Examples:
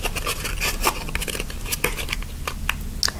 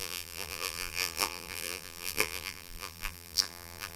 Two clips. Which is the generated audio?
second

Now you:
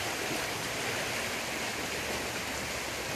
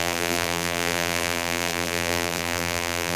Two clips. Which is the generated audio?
second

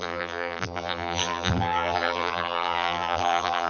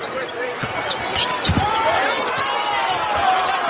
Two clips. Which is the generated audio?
first